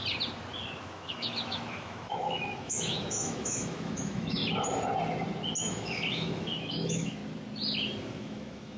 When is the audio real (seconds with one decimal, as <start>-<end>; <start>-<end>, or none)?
0.0-0.8; 4.4-5.6; 7.2-8.0